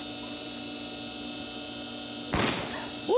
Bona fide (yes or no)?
yes